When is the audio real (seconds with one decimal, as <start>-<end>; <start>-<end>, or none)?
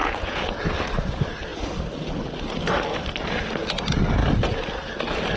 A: 0.6-5.4